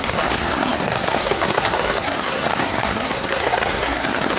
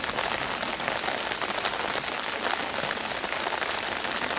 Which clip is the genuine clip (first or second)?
second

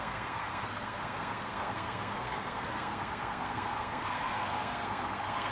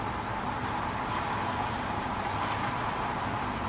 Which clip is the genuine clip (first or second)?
second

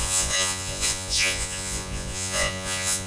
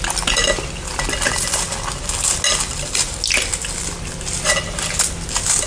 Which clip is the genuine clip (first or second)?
second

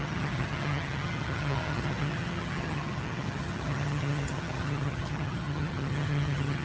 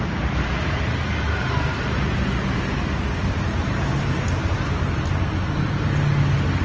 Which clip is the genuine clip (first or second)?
second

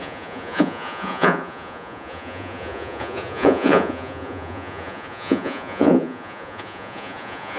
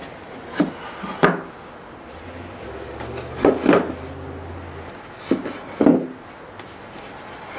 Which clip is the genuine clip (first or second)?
second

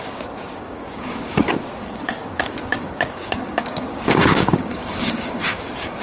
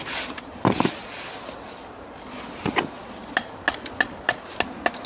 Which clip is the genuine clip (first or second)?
second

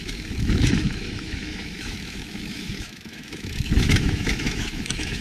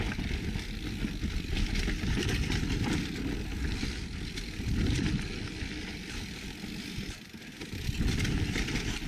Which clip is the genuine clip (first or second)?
second